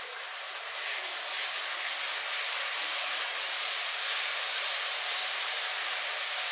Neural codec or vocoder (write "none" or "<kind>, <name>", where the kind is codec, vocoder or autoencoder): none